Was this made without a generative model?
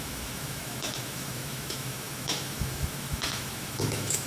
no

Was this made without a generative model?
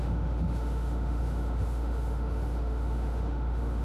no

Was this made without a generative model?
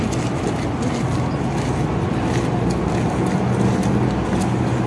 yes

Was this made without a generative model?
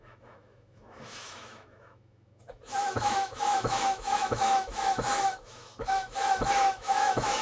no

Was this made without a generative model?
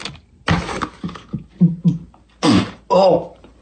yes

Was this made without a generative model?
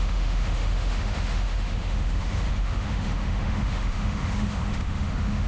no